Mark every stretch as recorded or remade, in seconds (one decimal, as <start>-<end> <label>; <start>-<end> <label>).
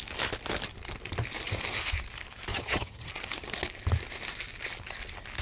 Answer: 0.0-2.5 recorded; 2.5-3.1 remade; 3.1-5.4 recorded